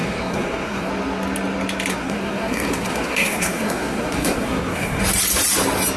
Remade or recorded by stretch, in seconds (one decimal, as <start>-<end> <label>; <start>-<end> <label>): 0.0-0.9 remade; 0.9-1.9 recorded; 1.9-5.0 remade; 5.0-6.0 recorded